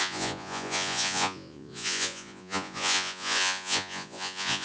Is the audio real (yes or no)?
no